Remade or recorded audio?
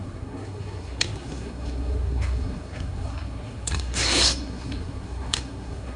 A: remade